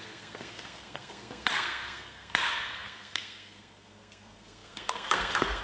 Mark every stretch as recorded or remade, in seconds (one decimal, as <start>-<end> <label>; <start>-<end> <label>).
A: 0.0-5.6 remade